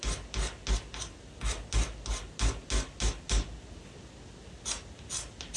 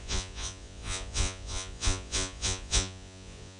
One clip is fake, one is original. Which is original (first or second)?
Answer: first